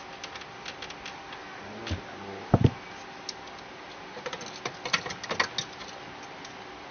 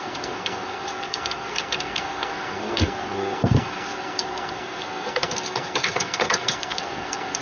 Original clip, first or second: first